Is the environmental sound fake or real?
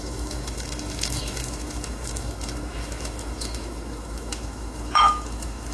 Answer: fake